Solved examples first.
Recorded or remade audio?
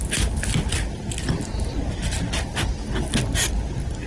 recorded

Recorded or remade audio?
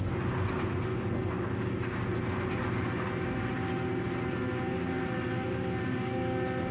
recorded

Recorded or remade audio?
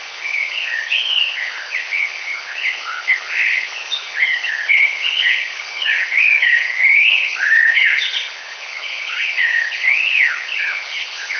remade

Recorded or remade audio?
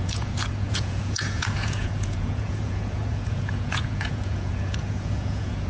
remade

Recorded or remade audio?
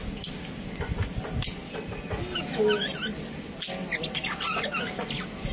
recorded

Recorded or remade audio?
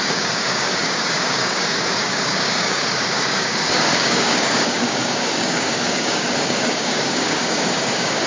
remade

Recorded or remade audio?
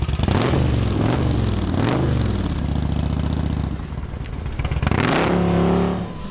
recorded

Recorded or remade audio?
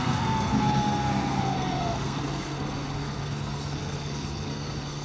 remade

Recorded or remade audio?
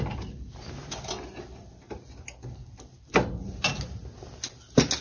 recorded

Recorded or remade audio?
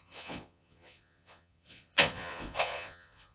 remade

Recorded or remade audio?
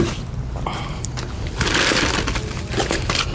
recorded